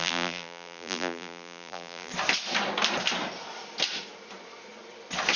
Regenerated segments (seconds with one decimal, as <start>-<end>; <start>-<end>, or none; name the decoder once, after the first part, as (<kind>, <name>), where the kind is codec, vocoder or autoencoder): 0.0-2.1 (vocoder, BigVGAN v2)